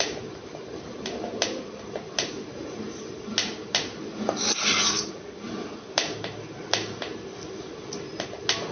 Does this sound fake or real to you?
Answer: real